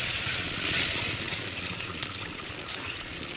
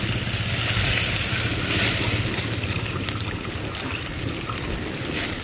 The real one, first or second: second